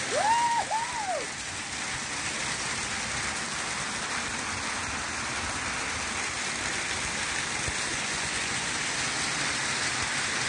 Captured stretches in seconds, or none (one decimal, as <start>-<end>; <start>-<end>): 0.0-7.9; 8.7-10.5